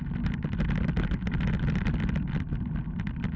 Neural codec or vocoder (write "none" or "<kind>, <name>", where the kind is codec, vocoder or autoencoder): none